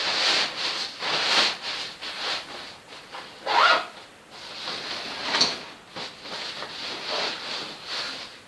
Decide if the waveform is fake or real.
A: real